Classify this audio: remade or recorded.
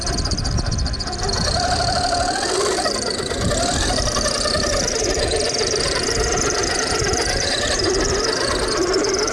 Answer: remade